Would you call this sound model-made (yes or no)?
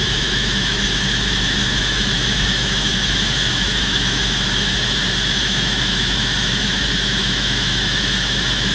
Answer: yes